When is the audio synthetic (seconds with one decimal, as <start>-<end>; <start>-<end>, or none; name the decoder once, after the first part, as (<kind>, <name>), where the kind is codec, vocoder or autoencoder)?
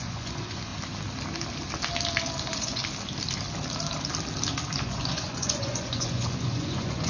0.0-0.7 (vocoder, Vocos); 2.4-2.8; 4.8-7.1